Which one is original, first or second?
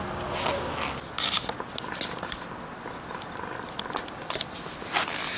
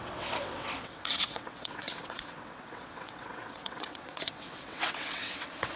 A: first